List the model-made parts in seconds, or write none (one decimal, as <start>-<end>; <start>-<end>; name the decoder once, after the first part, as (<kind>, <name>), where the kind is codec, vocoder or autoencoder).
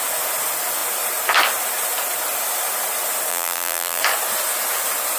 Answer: 3.3-4.0 (vocoder, BigVGAN v2)